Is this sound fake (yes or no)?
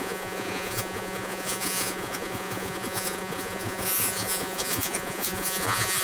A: yes